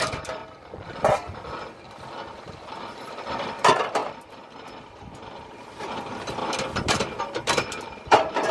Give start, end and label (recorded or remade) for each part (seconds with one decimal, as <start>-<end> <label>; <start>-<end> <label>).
0.0-0.4 remade; 0.4-2.6 recorded; 2.6-6.4 remade; 6.4-7.2 recorded; 7.2-8.5 remade

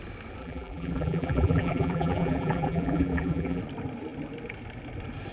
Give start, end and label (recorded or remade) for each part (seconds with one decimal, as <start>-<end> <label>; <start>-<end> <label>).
0.0-0.4 recorded; 0.4-3.6 remade; 3.6-5.3 recorded

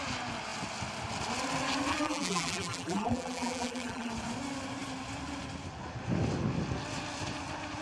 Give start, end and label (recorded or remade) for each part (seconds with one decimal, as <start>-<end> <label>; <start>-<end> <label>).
0.0-1.9 recorded; 1.9-4.1 remade; 4.1-7.8 recorded

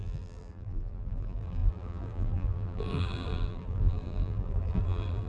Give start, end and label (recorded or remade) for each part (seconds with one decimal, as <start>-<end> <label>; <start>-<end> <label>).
0.0-5.3 remade

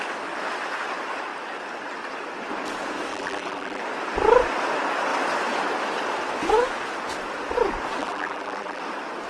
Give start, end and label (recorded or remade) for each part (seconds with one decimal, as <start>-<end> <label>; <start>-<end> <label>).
0.0-3.1 recorded; 3.1-3.8 remade; 3.8-8.0 recorded; 8.0-8.8 remade; 8.8-9.3 recorded